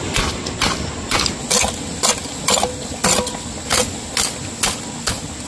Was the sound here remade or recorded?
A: recorded